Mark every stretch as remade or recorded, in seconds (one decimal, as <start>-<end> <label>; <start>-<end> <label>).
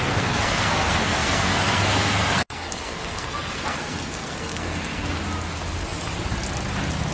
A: 0.0-5.2 remade; 5.2-7.1 recorded